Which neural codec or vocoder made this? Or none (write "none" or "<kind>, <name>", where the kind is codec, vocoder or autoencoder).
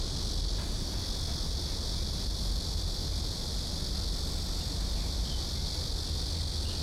none